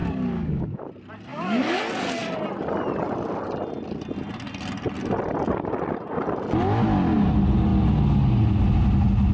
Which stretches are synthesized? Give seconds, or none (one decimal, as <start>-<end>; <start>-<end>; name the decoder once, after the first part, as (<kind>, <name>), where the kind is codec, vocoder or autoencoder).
0.0-0.9 (codec, DAC); 1.3-1.8